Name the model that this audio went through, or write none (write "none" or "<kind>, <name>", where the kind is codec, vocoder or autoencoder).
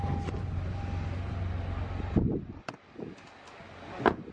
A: none